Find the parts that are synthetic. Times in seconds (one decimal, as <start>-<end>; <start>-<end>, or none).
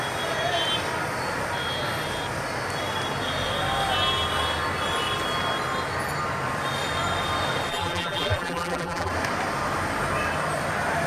7.7-9.1